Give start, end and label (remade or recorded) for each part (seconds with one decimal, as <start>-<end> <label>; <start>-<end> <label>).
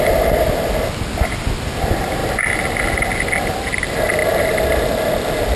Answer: 0.0-5.6 recorded